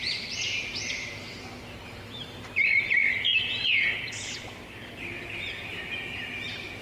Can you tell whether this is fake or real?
fake